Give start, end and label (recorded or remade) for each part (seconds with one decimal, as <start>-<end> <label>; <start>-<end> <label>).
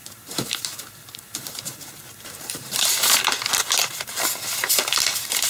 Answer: 0.0-3.2 remade; 3.2-3.8 recorded; 3.8-4.3 remade; 4.3-5.5 recorded